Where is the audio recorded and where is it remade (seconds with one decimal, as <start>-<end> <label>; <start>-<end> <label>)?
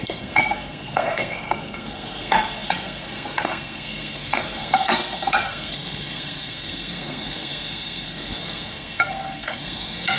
0.0-10.2 remade